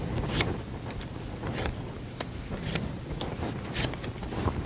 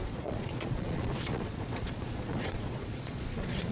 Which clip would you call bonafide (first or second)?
first